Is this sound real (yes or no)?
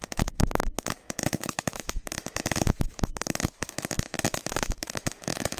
no